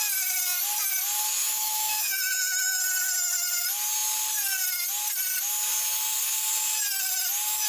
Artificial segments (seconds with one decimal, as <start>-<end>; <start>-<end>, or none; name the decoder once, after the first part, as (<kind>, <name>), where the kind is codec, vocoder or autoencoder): 1.4-2.8 (autoencoder, DAC-VAE)